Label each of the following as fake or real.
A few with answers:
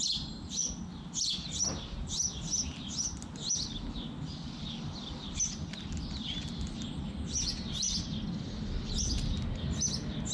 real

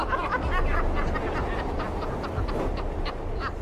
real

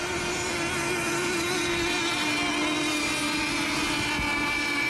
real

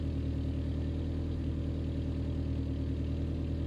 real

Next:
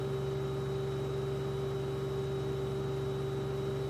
real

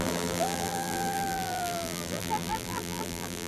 fake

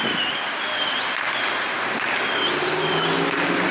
real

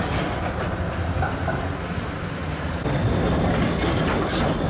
real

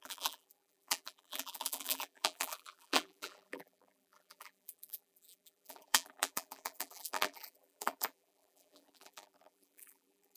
fake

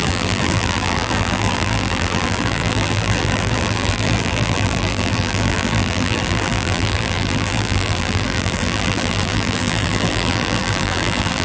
fake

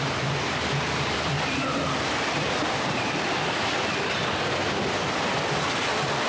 fake